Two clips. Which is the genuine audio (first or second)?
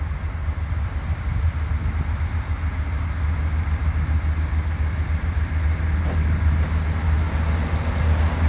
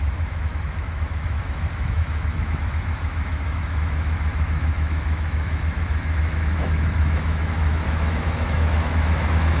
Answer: first